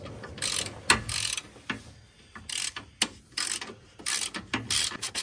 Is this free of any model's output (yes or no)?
yes